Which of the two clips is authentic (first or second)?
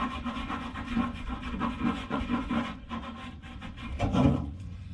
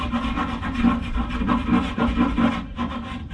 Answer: second